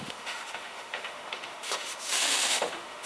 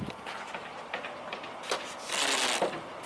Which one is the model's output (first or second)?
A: first